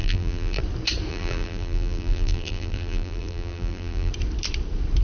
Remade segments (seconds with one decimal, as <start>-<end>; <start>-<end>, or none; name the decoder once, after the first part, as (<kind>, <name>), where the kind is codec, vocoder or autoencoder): 0.0-0.6 (vocoder, BigVGAN v2); 1.1-4.1